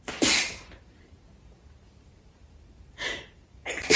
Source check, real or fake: fake